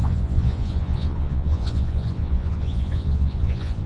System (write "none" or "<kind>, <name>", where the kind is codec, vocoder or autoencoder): vocoder, Vocos